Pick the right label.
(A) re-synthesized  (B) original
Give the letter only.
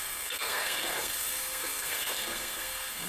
A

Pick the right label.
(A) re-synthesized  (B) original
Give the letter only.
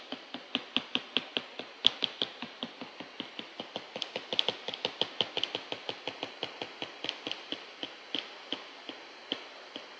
B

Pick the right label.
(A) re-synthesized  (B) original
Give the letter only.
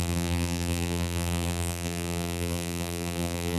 A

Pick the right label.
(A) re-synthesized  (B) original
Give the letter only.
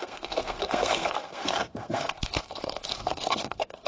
A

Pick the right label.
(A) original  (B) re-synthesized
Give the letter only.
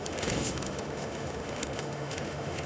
B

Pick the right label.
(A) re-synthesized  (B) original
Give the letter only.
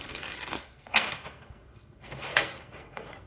A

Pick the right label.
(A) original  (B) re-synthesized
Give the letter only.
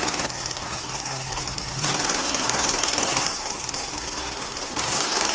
B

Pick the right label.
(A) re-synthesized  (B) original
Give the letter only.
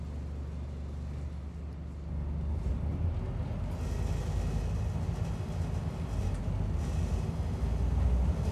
B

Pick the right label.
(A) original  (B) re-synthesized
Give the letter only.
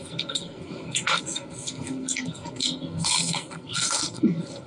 B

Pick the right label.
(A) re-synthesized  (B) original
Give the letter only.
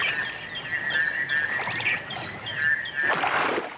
B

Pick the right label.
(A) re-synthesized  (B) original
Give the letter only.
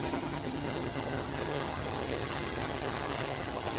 A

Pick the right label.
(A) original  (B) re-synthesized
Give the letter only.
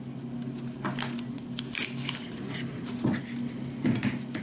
A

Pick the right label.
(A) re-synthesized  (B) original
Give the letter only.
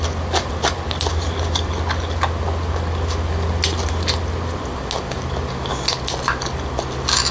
B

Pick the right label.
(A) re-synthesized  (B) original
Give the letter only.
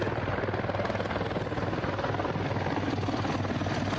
B